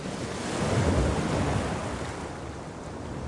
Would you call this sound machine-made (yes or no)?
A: no